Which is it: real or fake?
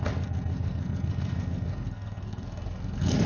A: fake